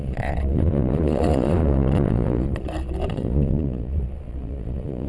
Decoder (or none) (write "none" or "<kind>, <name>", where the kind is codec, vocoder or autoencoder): vocoder, Vocos